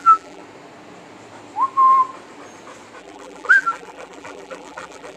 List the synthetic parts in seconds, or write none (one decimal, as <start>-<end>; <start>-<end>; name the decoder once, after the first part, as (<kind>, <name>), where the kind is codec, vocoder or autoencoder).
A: 0.0-0.4 (vocoder, BigVGAN v2); 3.0-5.2